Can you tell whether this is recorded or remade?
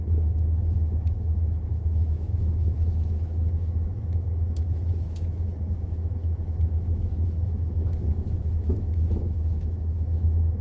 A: remade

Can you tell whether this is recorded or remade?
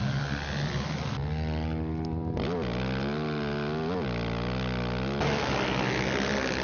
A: recorded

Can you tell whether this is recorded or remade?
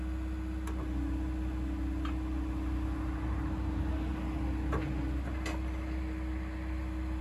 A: recorded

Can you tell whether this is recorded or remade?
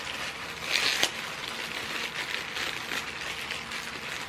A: recorded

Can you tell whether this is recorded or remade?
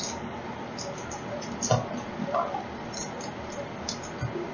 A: recorded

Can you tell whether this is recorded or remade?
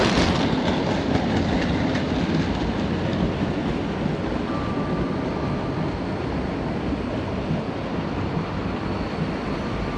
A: recorded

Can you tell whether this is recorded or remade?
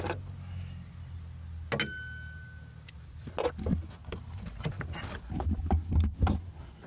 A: recorded